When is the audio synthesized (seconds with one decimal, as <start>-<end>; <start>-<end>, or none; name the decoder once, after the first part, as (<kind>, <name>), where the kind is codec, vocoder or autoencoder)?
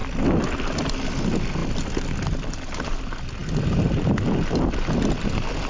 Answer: none